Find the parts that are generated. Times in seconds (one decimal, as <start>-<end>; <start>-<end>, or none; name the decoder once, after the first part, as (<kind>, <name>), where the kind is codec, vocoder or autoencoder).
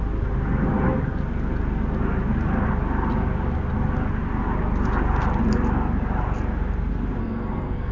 7.2-7.9 (codec, SNAC)